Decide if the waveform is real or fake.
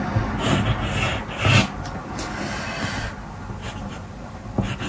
real